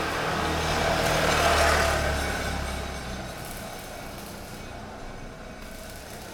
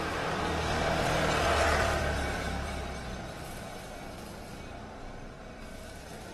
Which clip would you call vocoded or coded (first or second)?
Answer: second